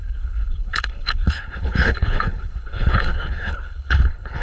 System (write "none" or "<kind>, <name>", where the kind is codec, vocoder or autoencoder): codec, HILCodec